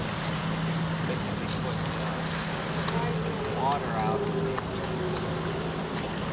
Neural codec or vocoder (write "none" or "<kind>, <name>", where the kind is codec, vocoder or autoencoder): none